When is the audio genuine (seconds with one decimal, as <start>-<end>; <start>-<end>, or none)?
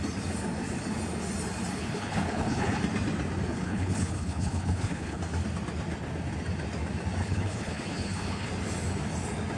0.0-1.8; 2.8-3.5; 5.2-7.2; 8.5-9.6